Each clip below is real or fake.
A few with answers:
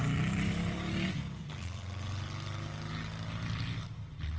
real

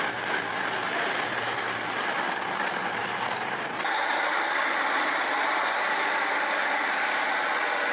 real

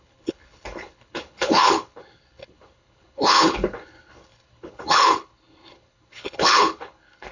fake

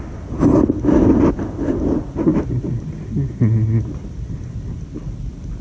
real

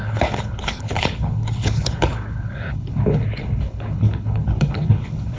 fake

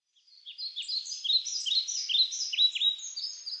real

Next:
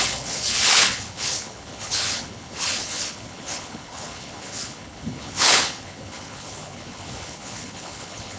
fake